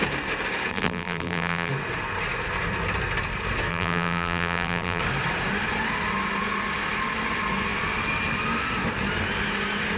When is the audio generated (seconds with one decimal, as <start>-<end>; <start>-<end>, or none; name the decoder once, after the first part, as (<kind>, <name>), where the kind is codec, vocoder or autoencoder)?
0.7-1.7 (vocoder, BigVGAN v2); 3.7-5.0